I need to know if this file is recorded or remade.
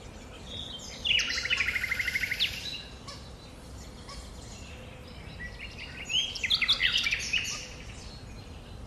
recorded